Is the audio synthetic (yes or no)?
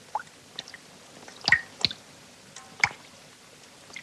no